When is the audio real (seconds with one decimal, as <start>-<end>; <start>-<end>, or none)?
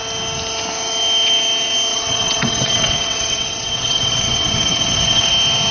0.0-1.9; 5.3-5.7